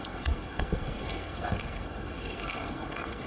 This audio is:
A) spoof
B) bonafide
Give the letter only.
A